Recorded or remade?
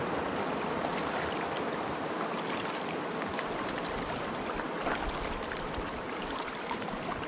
remade